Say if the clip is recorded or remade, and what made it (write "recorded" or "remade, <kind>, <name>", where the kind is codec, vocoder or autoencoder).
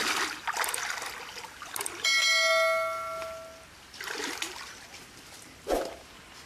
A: recorded